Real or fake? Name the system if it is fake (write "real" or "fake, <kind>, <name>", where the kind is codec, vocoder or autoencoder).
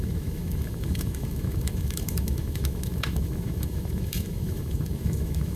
fake, autoencoder, DAC-VAE